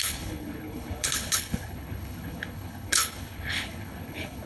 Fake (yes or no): yes